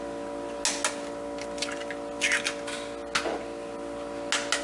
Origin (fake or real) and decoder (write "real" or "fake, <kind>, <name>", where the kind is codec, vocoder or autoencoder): real